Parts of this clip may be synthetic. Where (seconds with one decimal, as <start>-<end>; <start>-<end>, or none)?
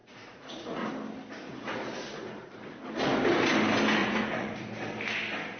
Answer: 0.0-0.9; 1.5-2.8; 4.0-4.7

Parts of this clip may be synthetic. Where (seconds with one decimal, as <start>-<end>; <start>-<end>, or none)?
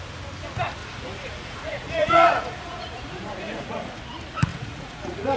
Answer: 0.8-4.0; 4.5-5.4